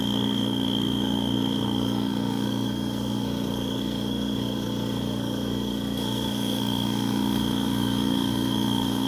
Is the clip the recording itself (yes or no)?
no